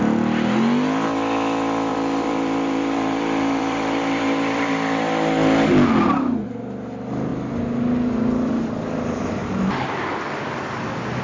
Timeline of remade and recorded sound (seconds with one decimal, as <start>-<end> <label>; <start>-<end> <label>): 0.0-1.9 recorded; 1.9-4.7 remade; 4.7-9.4 recorded; 9.4-10.2 remade; 10.2-11.2 recorded